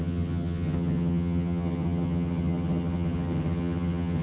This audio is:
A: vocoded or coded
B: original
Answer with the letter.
A